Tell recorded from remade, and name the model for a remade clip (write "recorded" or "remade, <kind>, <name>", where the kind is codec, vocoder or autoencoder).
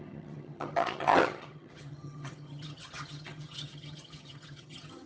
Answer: remade, vocoder, HiFi-GAN